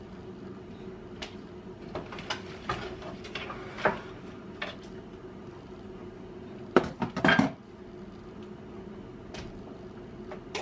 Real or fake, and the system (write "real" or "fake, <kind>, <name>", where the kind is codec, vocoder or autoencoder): real